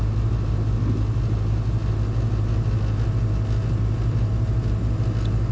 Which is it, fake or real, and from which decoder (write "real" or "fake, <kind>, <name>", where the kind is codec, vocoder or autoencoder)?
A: real